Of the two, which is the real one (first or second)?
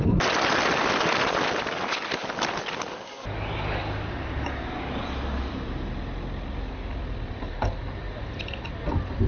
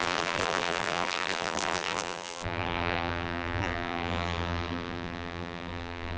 first